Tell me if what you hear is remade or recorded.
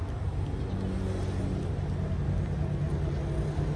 recorded